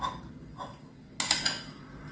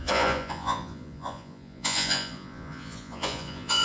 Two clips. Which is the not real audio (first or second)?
second